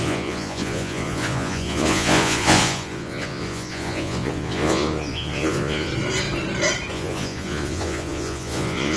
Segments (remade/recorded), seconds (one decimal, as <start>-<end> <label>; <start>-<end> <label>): 0.0-5.9 remade; 5.9-6.9 recorded; 6.9-9.0 remade